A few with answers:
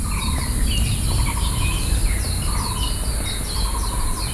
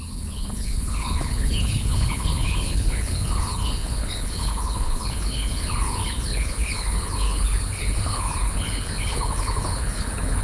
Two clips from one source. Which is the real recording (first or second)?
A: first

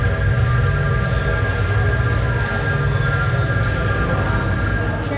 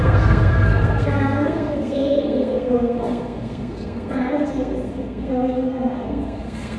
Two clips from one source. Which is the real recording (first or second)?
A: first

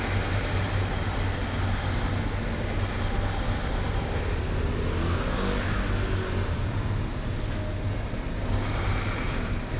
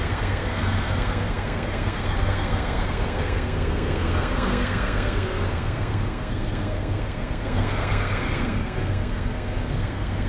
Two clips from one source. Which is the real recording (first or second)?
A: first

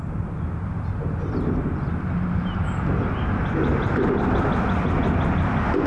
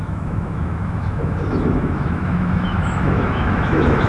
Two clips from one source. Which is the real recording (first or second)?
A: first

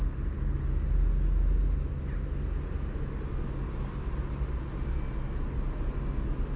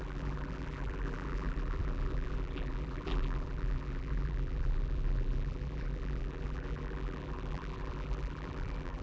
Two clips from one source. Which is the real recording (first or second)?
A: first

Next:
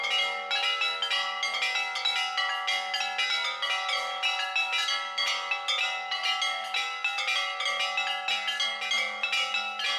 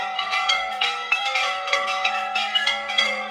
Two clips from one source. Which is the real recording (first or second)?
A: first